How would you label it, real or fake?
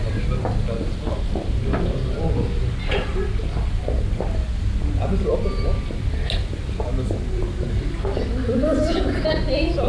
real